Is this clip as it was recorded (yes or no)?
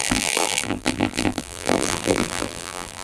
no